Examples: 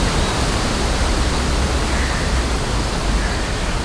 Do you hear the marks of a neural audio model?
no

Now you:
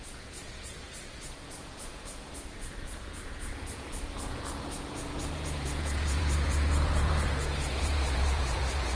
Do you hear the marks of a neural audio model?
yes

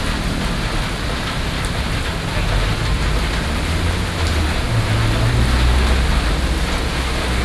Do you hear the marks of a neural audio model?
no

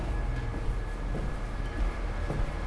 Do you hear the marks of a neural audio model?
no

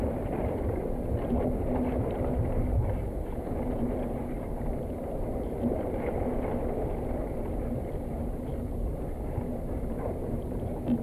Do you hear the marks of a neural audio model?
no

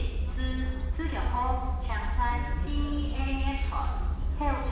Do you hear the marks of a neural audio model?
no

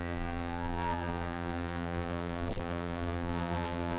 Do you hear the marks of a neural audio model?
yes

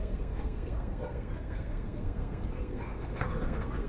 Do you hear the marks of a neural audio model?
yes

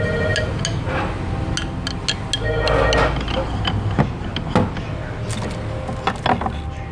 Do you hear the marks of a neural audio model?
no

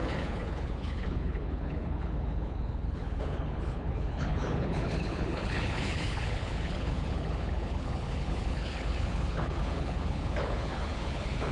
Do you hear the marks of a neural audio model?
yes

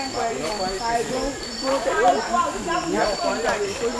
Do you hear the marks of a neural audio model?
no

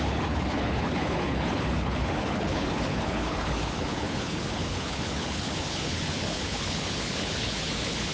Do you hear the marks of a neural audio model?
yes